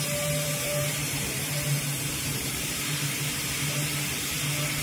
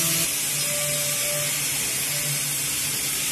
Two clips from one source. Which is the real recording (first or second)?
second